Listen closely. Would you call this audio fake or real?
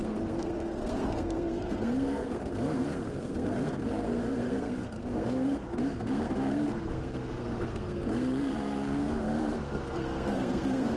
fake